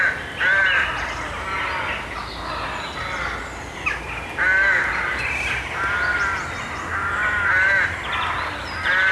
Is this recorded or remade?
recorded